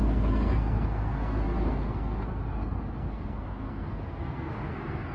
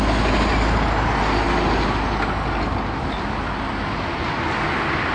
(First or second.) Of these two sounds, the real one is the second